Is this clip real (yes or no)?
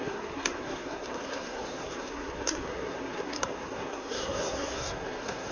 no